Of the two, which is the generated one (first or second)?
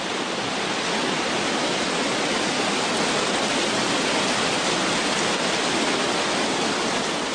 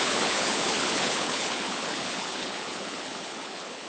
second